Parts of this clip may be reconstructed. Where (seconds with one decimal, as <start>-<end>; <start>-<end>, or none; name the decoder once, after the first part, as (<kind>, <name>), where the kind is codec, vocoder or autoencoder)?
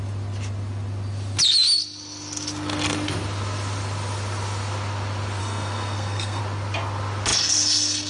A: 5.4-6.4 (codec, SNAC)